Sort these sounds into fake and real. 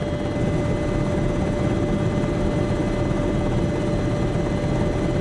real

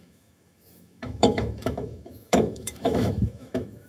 fake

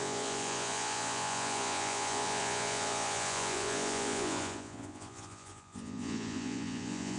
fake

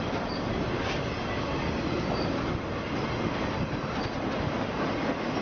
real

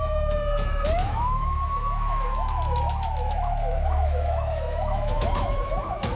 fake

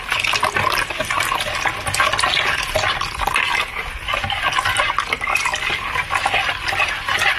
real